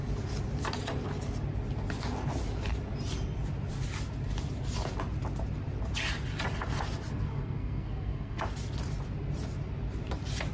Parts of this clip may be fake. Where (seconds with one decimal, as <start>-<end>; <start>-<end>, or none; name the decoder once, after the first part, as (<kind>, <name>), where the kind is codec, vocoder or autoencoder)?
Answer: 7.1-8.4 (codec, SNAC)